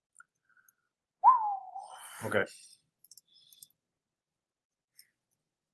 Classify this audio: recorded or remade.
recorded